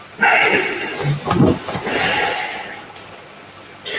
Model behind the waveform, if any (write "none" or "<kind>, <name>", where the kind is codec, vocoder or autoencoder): none